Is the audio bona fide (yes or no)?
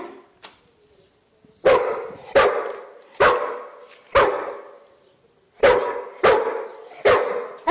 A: yes